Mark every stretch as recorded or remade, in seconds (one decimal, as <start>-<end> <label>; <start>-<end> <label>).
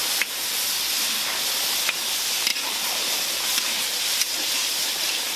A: 0.0-5.4 recorded